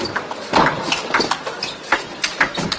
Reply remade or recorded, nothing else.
recorded